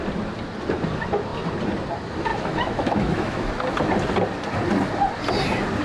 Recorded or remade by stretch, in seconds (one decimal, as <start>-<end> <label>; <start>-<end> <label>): 0.0-2.3 recorded; 2.3-3.5 remade; 3.5-5.8 recorded